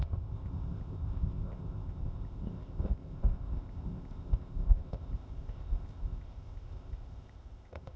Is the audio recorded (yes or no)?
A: no